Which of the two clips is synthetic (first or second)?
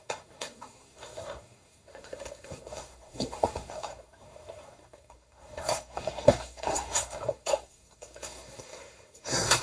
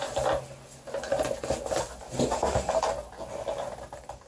first